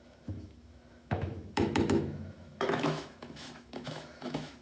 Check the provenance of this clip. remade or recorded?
remade